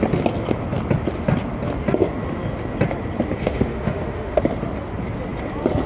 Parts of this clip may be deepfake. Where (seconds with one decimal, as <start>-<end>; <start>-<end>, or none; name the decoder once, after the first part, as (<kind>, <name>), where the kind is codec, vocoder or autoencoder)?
3.4-4.4 (autoencoder, DAC-VAE)